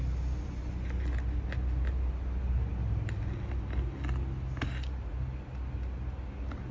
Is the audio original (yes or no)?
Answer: yes